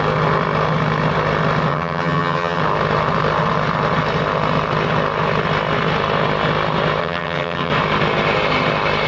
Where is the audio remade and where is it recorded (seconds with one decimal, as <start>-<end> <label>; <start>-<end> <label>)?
0.0-1.7 recorded; 1.7-2.6 remade; 2.6-7.0 recorded; 7.0-7.7 remade; 7.7-9.1 recorded